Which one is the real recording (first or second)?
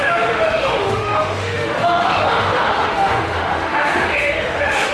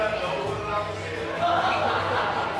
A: second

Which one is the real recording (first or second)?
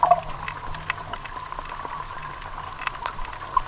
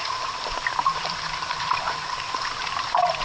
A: first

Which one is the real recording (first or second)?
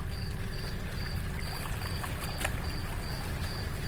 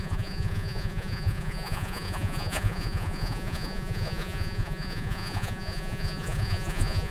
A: first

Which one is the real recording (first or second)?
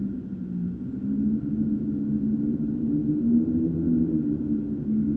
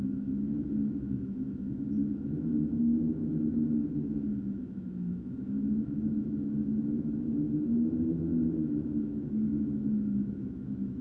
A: first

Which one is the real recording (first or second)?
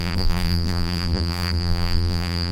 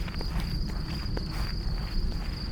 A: second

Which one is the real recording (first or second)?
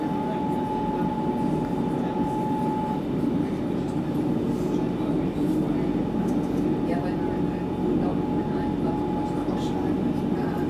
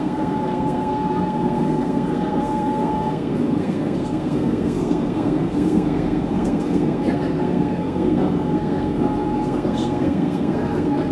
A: first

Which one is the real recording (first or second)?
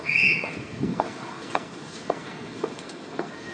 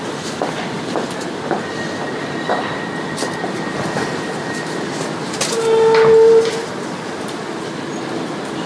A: second